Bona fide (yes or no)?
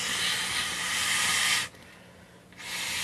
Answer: yes